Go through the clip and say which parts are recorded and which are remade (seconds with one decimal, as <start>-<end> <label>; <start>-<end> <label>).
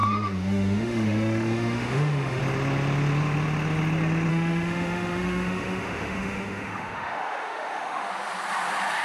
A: 0.0-2.4 remade; 2.4-4.3 recorded; 4.3-8.1 remade; 8.1-9.0 recorded